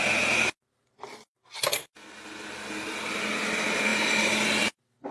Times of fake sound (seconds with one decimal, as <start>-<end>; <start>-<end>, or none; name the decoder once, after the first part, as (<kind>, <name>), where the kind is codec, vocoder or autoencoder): none